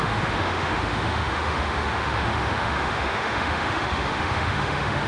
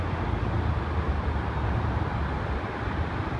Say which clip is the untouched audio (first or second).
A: second